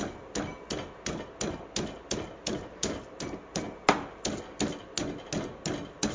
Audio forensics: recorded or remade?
recorded